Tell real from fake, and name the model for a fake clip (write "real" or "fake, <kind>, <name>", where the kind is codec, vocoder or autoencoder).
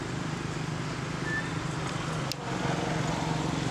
real